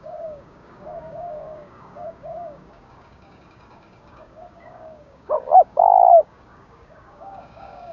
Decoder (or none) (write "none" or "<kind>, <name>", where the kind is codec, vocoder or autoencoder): codec, DAC